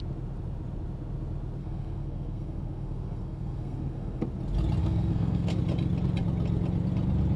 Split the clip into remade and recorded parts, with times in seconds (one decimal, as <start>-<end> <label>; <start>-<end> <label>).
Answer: 0.0-1.6 recorded; 1.6-4.2 remade; 4.2-4.8 recorded; 4.8-5.6 remade; 5.6-7.4 recorded